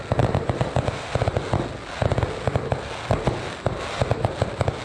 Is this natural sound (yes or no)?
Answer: yes